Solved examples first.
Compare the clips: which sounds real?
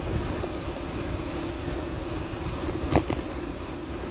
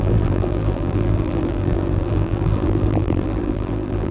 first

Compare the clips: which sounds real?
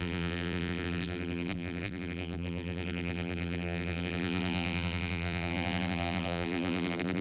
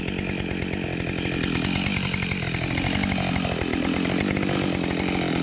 second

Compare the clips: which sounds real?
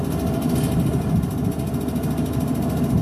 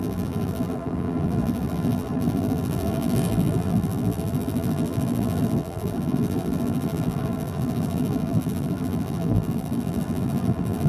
first